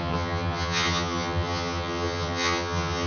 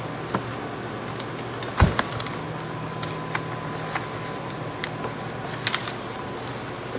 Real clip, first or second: second